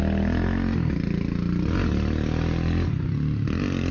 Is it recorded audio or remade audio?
recorded